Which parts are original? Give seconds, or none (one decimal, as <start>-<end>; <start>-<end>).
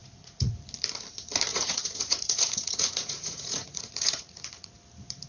0.5-1.5; 4.7-5.3